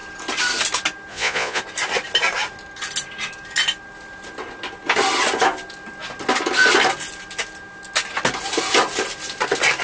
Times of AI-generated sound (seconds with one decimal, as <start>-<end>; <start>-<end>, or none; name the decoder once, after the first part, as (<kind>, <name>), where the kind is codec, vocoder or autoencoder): 1.1-1.6 (vocoder, Vocos)